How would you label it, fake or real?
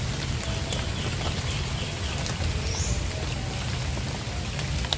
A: real